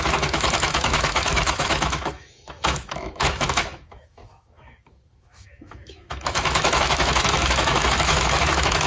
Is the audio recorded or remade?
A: remade